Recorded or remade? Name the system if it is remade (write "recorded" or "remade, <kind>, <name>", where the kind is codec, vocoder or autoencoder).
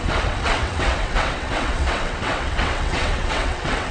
remade, vocoder, WaveNeXt